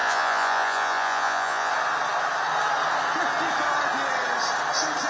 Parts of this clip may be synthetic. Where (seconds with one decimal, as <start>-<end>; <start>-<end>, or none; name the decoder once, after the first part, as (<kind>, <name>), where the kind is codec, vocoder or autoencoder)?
0.0-1.7 (vocoder, Vocos)